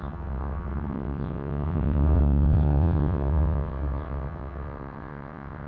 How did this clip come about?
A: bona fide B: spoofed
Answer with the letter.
B